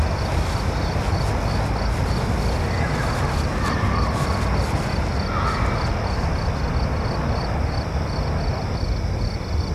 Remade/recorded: recorded